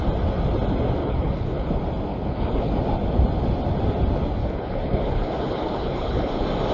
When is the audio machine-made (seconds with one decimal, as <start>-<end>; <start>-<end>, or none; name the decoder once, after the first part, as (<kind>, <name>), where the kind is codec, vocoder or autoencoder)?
1.0-1.7 (codec, HILCodec); 2.1-2.7; 4.4-6.3